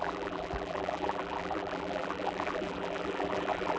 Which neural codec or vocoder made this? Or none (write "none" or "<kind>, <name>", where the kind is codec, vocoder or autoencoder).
vocoder, BigVGAN v2